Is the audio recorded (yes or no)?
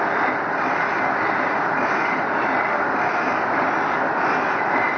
yes